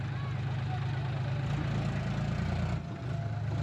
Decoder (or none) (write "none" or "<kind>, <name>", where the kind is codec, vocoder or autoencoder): none